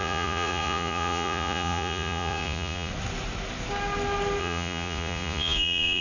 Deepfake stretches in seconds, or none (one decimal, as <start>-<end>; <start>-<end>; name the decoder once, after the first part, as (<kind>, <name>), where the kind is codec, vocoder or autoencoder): 0.0-2.9 (vocoder, Vocos); 4.4-6.0